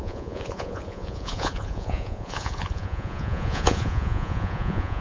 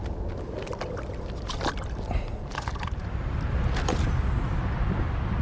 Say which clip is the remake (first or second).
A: first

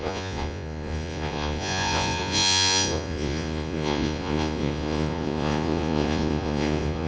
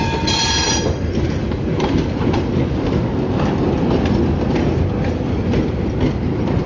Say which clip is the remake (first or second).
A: first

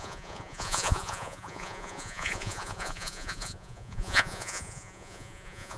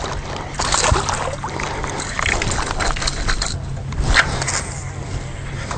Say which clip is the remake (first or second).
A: first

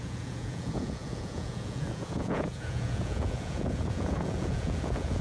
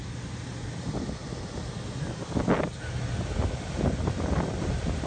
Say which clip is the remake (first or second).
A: first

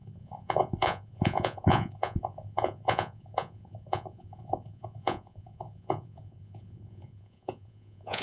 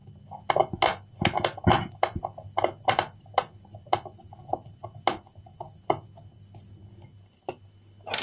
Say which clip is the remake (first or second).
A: first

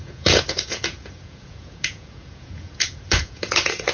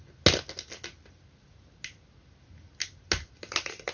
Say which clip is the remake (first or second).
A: first